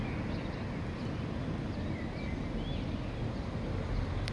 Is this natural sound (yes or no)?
yes